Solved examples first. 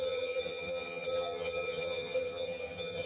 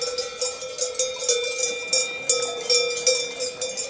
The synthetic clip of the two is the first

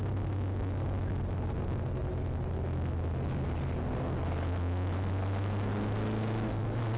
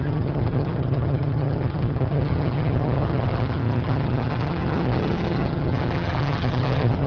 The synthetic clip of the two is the second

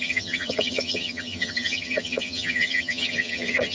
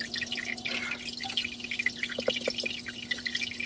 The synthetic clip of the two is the first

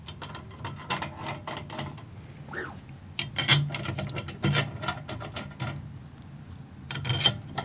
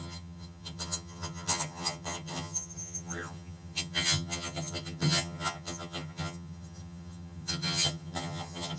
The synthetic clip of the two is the second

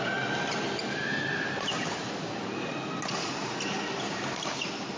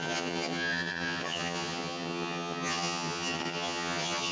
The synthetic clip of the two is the second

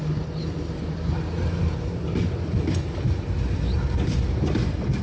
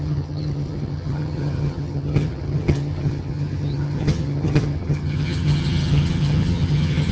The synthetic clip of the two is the second